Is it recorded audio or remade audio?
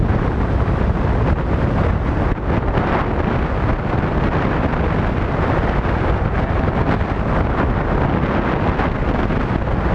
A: recorded